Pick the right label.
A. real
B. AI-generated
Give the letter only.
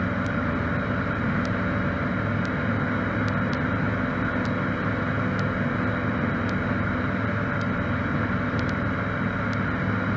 A